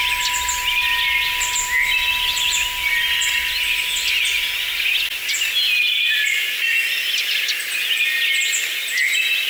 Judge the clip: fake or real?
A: real